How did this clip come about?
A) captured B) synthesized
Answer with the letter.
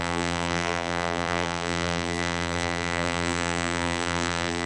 B